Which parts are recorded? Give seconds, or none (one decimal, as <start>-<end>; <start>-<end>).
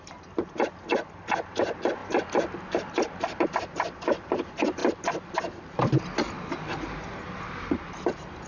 0.0-8.5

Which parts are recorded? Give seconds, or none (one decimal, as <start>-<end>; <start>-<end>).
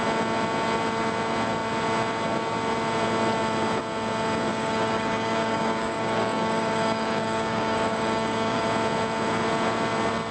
0.0-4.5; 8.6-10.3